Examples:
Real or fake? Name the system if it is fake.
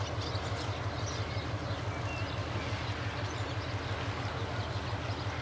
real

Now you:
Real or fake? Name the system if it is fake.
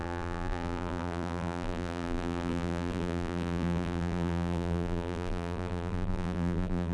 fake, vocoder, BigVGAN v2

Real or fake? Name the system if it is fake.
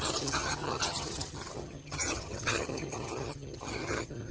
fake, vocoder, HiFi-GAN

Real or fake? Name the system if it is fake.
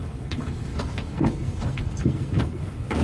fake, codec, SNAC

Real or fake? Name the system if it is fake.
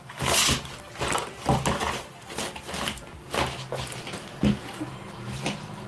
real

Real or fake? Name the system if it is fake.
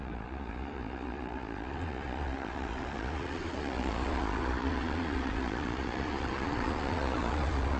fake, vocoder, Vocos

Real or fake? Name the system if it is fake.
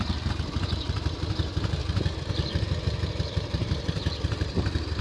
fake, vocoder, BigVGAN v2